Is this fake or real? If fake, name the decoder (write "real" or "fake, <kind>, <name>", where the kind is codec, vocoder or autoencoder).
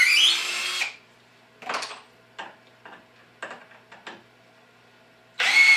real